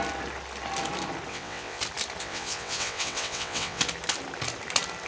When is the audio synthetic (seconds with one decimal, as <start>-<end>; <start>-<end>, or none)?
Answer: 1.3-1.8; 2.2-3.8